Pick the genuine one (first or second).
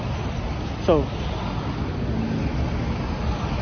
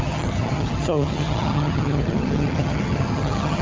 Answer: first